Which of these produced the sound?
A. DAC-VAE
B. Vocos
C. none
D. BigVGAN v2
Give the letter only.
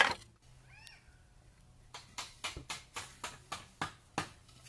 C